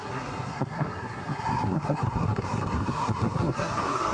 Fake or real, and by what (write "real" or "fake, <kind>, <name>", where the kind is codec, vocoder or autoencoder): fake, codec, SNAC